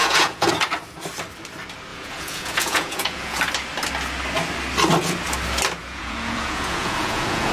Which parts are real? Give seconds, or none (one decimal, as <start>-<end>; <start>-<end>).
0.5-1.9; 3.4-5.8